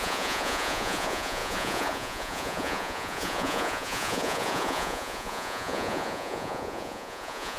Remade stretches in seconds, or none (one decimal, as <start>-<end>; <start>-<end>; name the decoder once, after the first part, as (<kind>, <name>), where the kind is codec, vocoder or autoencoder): 0.0-7.6 (vocoder, Vocos)